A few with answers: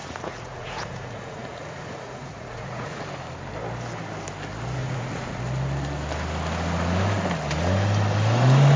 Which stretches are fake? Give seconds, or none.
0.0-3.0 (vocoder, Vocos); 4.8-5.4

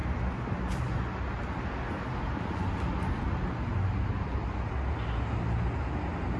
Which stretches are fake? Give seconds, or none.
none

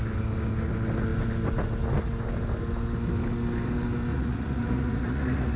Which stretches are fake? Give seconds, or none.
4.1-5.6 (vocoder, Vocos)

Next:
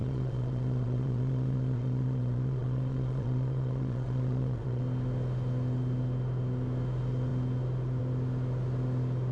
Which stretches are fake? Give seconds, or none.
0.0-4.8 (vocoder, Vocos)